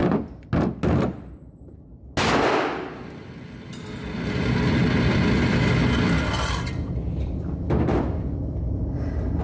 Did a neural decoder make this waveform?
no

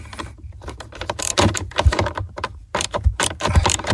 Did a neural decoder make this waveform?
yes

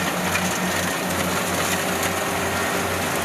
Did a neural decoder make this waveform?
no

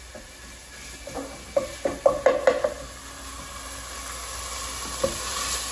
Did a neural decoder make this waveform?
no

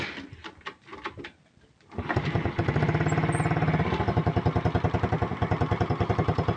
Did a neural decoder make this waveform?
no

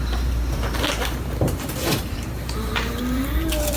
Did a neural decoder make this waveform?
yes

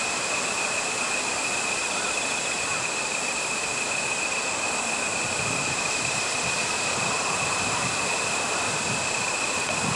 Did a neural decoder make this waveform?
yes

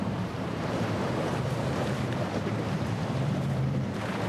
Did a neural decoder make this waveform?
yes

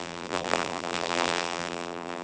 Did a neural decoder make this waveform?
yes